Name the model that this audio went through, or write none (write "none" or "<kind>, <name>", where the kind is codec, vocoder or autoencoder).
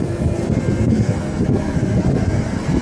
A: codec, SNAC